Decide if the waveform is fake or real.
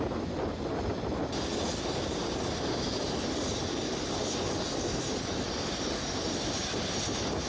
real